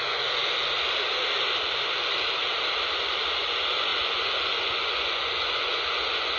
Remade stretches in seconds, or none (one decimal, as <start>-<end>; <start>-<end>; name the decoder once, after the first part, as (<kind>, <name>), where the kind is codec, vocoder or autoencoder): 0.0-0.4 (vocoder, Vocos); 3.4-6.4